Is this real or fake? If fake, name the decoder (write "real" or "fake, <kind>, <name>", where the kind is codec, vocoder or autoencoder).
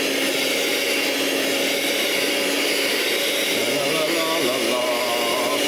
real